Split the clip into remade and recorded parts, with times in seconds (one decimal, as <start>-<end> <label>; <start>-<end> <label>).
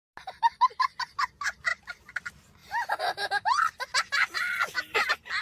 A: 0.0-1.7 recorded; 1.7-2.2 remade; 2.2-5.4 recorded